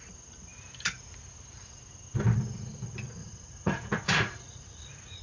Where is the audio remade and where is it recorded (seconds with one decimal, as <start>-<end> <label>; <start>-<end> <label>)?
0.0-3.2 recorded; 3.2-5.2 remade